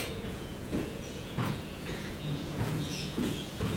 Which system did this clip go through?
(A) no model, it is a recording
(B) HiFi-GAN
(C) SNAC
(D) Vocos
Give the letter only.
D